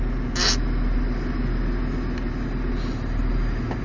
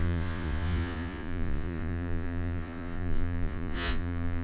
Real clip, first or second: first